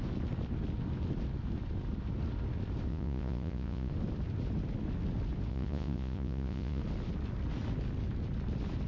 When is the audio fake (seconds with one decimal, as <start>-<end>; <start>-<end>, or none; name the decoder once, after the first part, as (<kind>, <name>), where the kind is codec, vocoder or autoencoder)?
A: 2.9-3.9 (vocoder, Vocos); 5.5-6.8